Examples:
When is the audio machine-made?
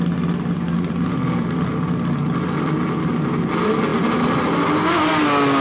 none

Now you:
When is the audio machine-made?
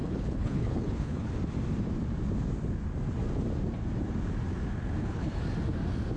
0.0-1.3 (codec, HILCodec); 5.0-5.4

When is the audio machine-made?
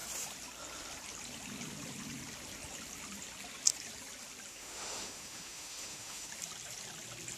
4.5-6.3 (autoencoder, DAC-VAE)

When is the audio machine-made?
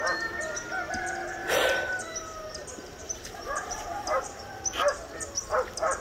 1.4-5.0 (vocoder, BigVGAN v2)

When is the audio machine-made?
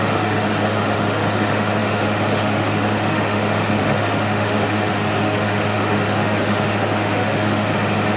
0.0-8.2 (autoencoder, DAC-VAE)